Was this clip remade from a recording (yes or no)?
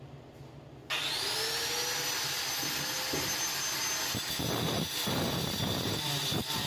no